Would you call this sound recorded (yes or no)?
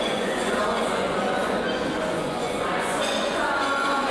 no